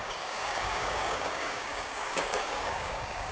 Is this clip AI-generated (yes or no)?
yes